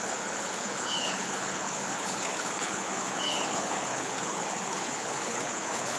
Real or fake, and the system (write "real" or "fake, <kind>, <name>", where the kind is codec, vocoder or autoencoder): fake, codec, HILCodec